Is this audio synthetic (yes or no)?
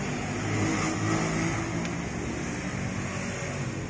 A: no